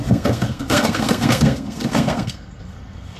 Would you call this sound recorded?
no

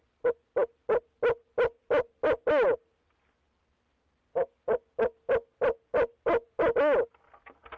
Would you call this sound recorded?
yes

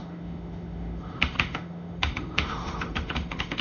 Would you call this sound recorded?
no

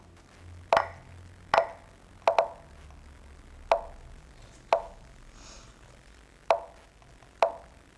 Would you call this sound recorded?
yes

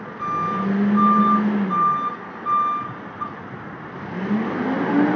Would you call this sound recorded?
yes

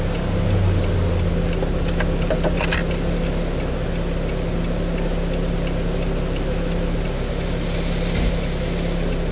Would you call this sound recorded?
yes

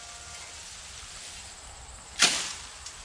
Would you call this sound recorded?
yes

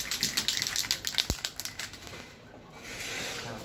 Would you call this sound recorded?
yes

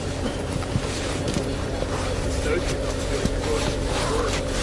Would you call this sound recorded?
no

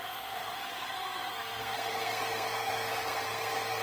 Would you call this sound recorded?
no